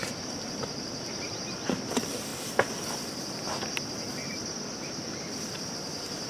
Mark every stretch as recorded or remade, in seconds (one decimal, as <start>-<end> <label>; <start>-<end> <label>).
0.0-1.3 remade; 1.3-6.3 recorded